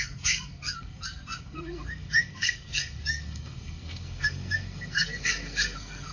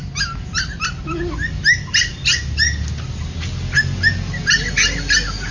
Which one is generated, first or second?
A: first